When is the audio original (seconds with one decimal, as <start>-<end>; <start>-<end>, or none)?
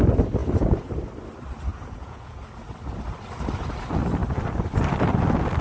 0.0-0.4; 0.9-1.7; 2.4-5.6